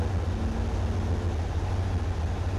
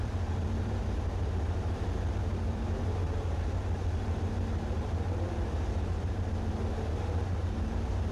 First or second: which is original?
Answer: first